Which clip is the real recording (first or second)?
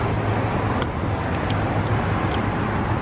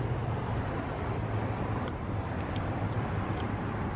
first